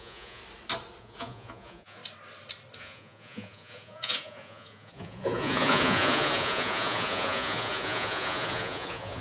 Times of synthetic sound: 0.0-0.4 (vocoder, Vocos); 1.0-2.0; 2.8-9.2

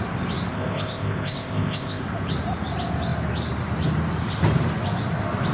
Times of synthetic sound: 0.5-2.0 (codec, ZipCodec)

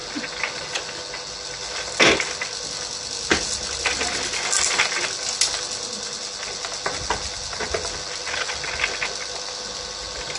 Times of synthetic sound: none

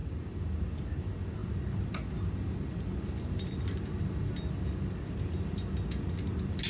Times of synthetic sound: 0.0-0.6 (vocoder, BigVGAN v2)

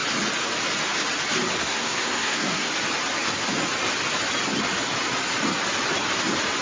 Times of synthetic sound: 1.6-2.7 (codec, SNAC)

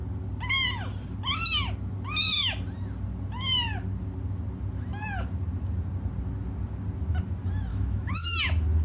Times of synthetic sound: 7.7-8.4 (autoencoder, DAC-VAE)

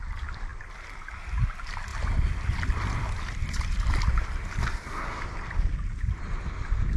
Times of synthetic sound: 4.6-5.2 (codec, SNAC)

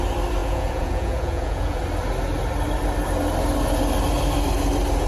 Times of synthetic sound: 0.4-1.8 (vocoder, Vocos)